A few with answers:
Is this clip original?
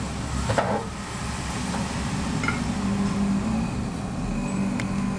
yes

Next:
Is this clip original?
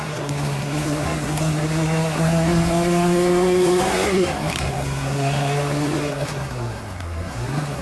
no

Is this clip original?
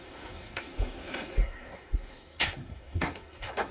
no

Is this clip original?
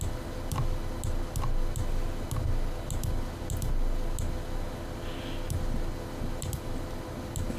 yes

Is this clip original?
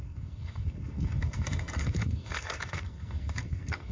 no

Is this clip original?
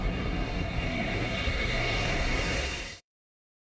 no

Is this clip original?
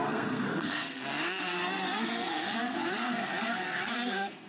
no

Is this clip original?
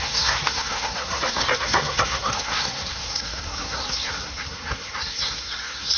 no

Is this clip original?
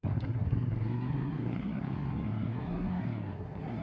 no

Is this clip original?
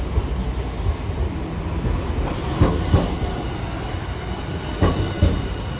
yes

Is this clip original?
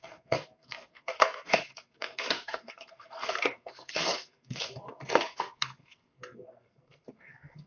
no